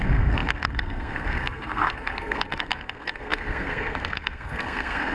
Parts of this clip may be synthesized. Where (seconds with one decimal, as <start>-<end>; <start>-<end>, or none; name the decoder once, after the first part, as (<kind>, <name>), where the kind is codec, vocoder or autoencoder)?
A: 0.0-5.1 (codec, SNAC)